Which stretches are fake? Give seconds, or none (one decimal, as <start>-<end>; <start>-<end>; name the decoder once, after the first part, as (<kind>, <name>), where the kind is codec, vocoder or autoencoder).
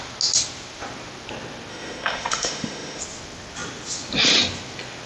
1.7-3.0 (autoencoder, DAC-VAE)